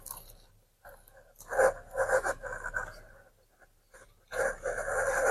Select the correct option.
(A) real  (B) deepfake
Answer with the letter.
A